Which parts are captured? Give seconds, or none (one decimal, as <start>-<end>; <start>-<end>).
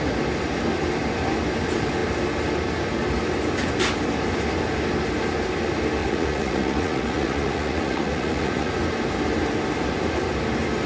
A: 0.0-6.0; 8.7-10.9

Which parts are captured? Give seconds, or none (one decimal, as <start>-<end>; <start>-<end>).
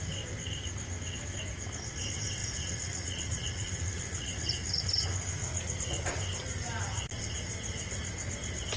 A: 0.0-2.4; 4.8-5.4; 6.2-8.8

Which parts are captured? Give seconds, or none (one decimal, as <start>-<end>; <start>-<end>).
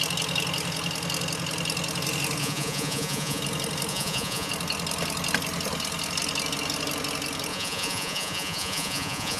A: 0.0-2.4; 3.4-3.9; 4.5-7.5